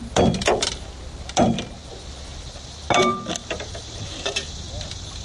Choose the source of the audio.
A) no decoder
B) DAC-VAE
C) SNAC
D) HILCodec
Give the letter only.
A